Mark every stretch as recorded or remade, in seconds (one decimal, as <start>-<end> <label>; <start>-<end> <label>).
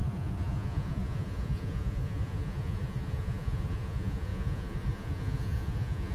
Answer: 0.0-6.1 remade